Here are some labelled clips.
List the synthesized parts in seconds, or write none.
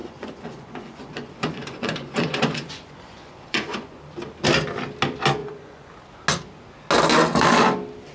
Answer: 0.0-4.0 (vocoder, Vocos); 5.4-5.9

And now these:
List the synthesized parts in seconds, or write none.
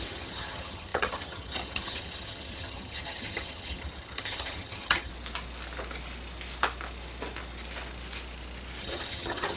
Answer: 0.0-5.1 (vocoder, HiFi-GAN); 8.8-9.6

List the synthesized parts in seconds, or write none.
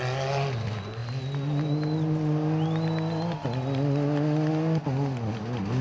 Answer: none